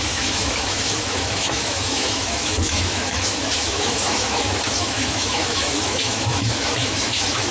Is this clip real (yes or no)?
no